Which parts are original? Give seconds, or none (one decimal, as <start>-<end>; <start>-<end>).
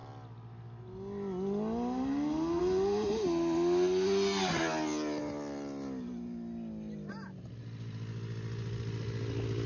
0.0-9.7